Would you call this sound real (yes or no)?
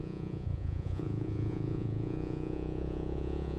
no